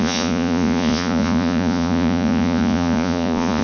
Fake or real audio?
fake